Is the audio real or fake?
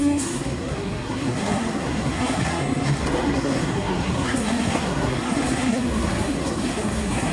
fake